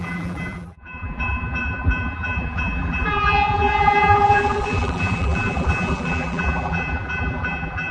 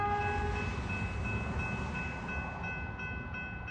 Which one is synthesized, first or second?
first